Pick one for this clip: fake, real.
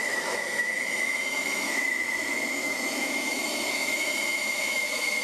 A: fake